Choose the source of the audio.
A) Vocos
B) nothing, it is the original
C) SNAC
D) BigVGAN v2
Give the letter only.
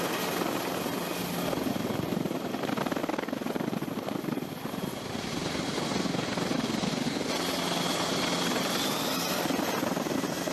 B